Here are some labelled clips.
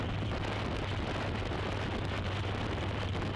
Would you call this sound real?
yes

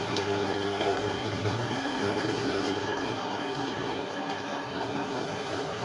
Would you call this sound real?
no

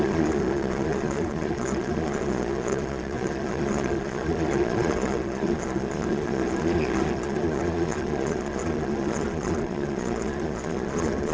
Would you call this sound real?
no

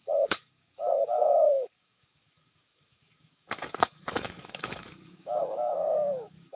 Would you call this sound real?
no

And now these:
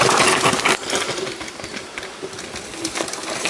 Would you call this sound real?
yes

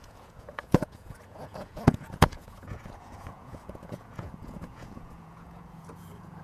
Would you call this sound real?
no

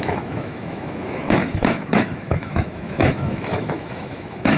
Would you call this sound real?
no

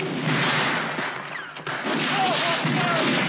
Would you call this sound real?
yes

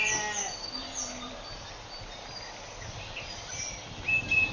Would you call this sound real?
yes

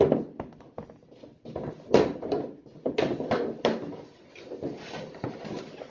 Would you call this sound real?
yes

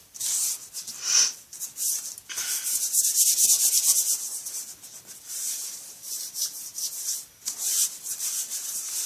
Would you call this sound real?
yes